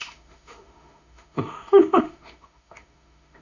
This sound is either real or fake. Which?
fake